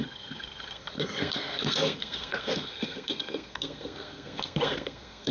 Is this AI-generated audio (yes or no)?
yes